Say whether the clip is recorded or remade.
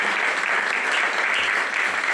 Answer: recorded